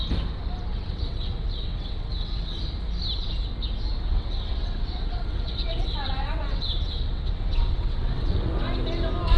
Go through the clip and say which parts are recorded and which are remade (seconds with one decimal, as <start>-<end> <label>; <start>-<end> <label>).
0.0-0.7 recorded; 0.7-2.6 remade; 2.6-4.1 recorded; 4.1-8.5 remade; 8.5-9.4 recorded